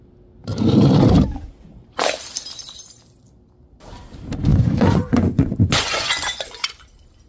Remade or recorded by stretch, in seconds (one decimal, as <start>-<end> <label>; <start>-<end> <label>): 0.0-4.5 recorded; 4.5-6.8 remade; 6.8-7.3 recorded